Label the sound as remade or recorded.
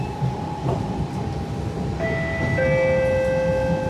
recorded